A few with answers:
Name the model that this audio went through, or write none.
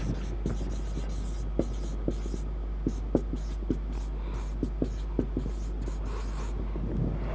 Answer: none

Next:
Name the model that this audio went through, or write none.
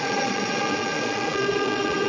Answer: vocoder, Vocos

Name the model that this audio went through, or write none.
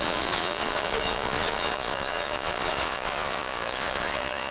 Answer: vocoder, Vocos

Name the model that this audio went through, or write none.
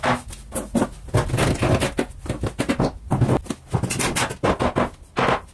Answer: none